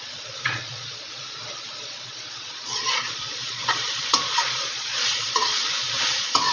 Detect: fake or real fake